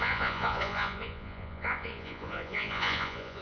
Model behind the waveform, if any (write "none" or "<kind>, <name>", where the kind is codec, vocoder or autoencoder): vocoder, Vocos